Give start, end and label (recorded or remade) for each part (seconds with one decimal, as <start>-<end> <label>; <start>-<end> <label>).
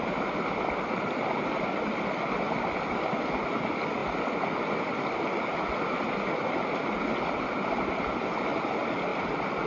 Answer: 0.0-0.6 remade; 0.6-9.7 recorded